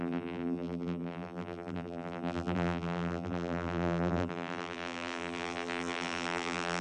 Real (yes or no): no